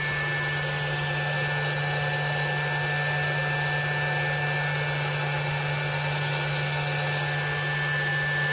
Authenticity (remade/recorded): recorded